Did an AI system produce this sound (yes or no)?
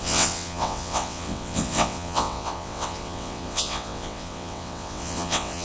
yes